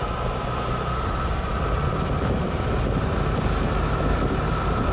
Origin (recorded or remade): remade